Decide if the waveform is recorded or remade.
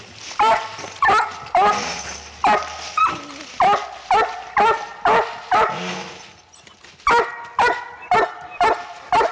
recorded